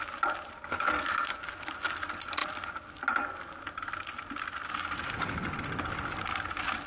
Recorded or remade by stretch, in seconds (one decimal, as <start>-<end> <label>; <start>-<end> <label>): 0.0-6.9 recorded